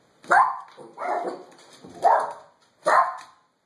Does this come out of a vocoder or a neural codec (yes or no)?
no